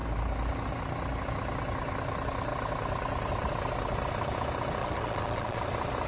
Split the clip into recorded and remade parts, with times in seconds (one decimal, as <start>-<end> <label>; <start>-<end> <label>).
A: 0.0-4.8 recorded; 4.8-5.6 remade; 5.6-6.1 recorded